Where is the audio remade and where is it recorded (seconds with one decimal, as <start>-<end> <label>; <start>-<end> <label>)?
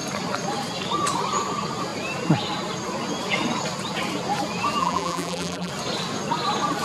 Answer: 0.0-4.8 recorded; 4.8-5.7 remade; 5.7-6.8 recorded